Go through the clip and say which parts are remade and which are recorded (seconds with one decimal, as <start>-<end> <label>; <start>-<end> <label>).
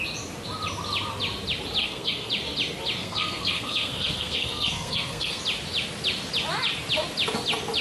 0.0-1.8 recorded; 1.8-2.3 remade; 2.3-3.0 recorded; 3.0-5.4 remade; 5.4-7.8 recorded